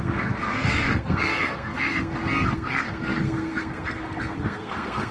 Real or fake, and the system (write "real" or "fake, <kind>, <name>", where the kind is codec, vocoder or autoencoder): fake, codec, SNAC